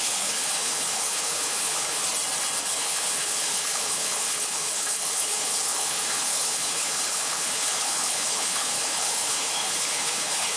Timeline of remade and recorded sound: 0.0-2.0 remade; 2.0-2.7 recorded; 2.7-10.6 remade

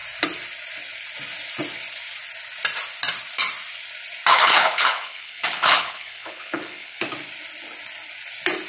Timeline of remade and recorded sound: 0.0-4.3 recorded; 4.3-7.0 remade; 7.0-8.7 recorded

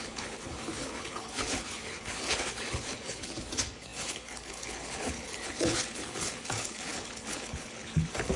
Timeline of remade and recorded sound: 0.0-8.4 remade

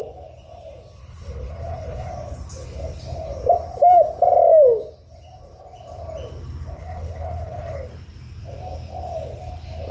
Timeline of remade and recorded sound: 0.0-1.0 recorded; 1.0-2.1 remade; 2.1-6.8 recorded; 6.8-7.9 remade; 7.9-9.9 recorded

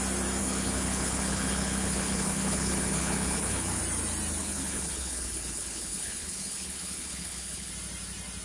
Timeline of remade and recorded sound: 0.0-0.4 recorded; 0.4-3.8 remade; 3.8-4.4 recorded; 4.4-7.7 remade; 7.7-8.4 recorded

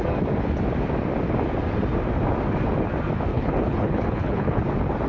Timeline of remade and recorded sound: 0.0-3.3 recorded; 3.3-4.6 remade; 4.6-5.1 recorded

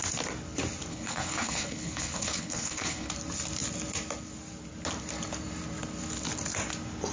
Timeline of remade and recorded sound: 0.0-0.9 recorded; 0.9-3.1 remade; 3.1-7.1 recorded

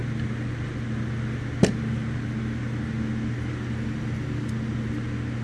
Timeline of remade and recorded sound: 0.0-5.4 recorded